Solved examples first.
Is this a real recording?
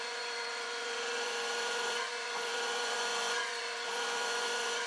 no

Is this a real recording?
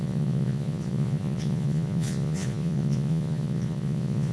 no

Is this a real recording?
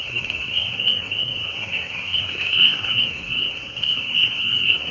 no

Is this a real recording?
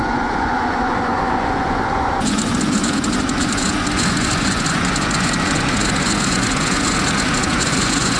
no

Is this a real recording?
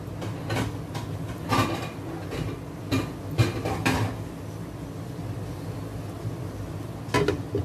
yes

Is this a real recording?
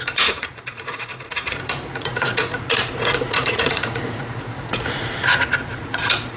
no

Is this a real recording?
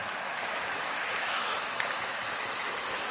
no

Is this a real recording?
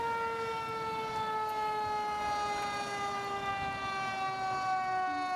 yes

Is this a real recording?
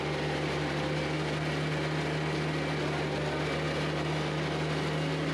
yes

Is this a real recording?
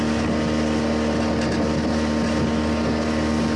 yes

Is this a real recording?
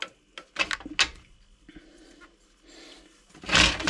yes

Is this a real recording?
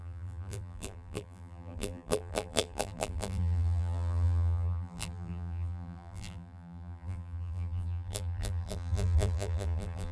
no